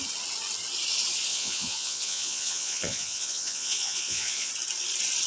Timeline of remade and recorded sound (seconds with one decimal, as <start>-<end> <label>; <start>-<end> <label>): 0.0-1.3 recorded; 1.3-4.5 remade; 4.5-5.3 recorded